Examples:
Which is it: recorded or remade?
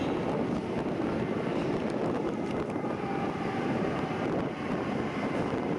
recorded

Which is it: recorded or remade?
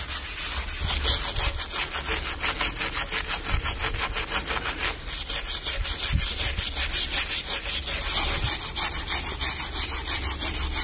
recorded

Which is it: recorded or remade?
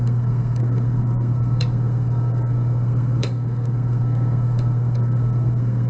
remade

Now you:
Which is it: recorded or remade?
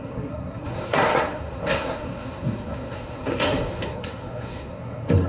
remade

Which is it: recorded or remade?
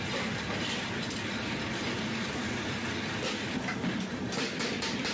recorded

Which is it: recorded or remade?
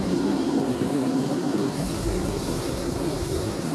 remade